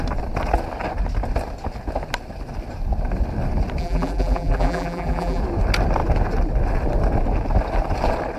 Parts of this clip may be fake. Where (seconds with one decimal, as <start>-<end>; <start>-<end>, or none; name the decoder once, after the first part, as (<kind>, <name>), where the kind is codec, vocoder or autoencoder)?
3.8-5.4 (vocoder, BigVGAN v2)